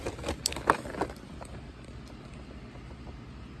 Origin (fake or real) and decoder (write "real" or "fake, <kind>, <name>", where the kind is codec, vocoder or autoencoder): real